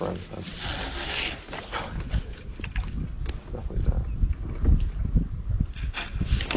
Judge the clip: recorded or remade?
recorded